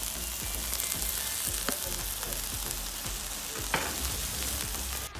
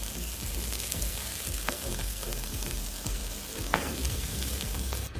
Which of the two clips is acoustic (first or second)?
first